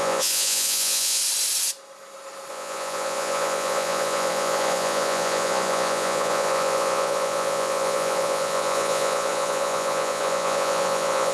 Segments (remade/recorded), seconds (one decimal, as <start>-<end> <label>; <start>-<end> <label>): 0.0-1.2 remade; 1.2-2.5 recorded; 2.5-11.3 remade